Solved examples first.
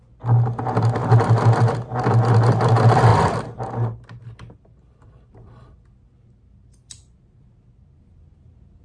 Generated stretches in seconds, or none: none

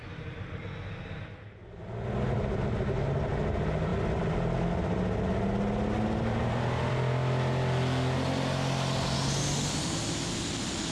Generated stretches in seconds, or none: none

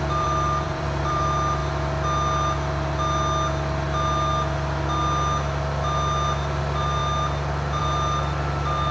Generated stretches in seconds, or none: 0.0-1.6 (vocoder, BigVGAN v2); 6.6-7.0; 7.8-8.9